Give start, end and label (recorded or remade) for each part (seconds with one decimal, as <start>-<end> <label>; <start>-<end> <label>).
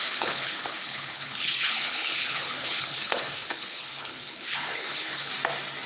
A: 0.0-5.3 remade; 5.3-5.9 recorded